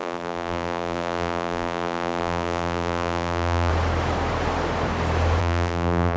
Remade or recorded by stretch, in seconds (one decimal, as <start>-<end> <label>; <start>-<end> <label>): 0.0-3.7 remade; 3.7-5.4 recorded; 5.4-6.2 remade